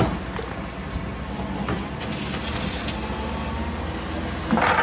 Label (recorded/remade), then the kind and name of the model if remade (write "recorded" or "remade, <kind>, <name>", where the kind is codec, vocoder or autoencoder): recorded